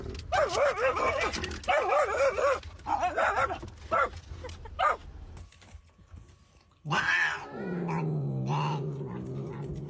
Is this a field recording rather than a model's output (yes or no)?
yes